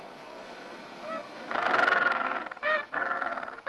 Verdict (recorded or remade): remade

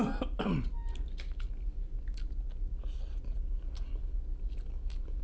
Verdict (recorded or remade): recorded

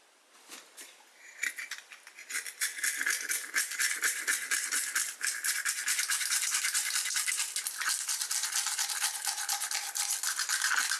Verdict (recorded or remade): recorded